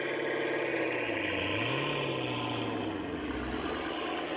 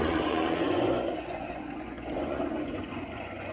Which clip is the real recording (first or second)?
first